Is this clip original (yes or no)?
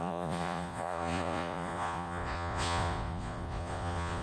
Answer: no